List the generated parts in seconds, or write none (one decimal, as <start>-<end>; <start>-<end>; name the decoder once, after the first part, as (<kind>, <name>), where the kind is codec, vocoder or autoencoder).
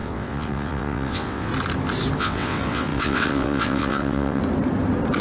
0.0-1.5 (vocoder, WaveNeXt); 2.2-4.4